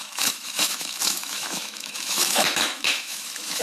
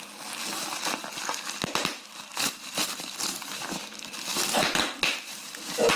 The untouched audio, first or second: second